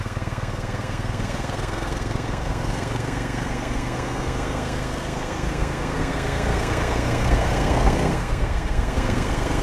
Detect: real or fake fake